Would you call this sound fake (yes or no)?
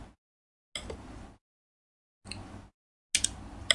no